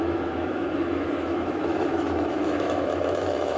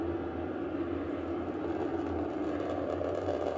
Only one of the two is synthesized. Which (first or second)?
first